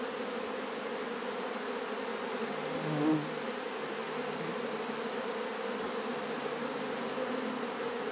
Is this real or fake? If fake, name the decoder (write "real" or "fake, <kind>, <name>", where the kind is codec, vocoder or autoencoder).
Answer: real